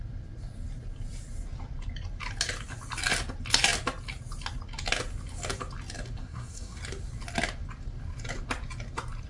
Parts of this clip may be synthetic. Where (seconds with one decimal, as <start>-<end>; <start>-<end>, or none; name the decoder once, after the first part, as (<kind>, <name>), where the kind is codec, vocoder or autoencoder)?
6.2-6.8 (codec, SNAC)